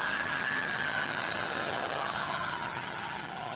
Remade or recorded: remade